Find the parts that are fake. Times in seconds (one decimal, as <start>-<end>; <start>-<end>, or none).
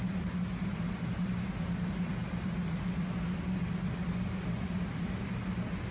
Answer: none